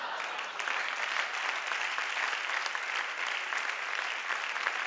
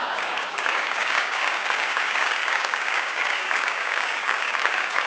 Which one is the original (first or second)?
first